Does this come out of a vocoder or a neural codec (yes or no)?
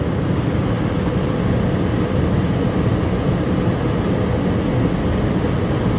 no